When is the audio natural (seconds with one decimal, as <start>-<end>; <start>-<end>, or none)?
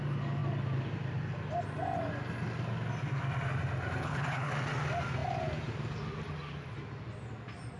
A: 0.0-4.0; 4.5-7.8